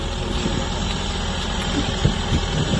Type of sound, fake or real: real